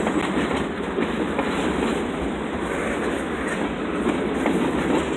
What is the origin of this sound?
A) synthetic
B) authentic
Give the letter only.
B